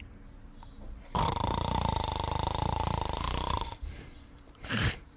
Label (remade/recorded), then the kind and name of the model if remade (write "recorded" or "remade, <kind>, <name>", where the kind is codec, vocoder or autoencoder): remade, vocoder, BigVGAN v2